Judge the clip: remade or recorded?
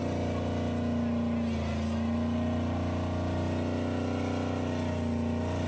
recorded